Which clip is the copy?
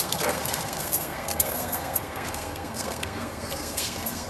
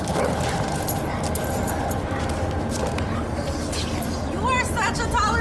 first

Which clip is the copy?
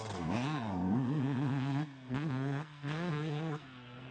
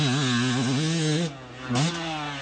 first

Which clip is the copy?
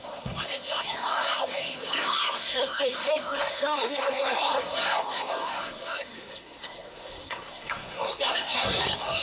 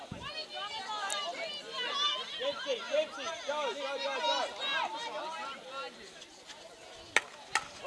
first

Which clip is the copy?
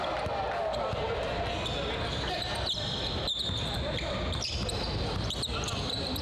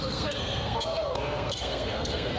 second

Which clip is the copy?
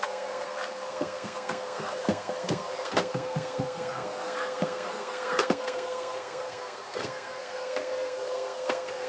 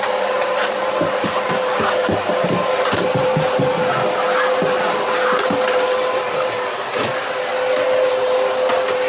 first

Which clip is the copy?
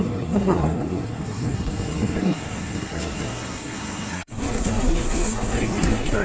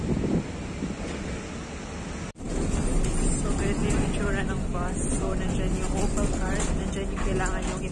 first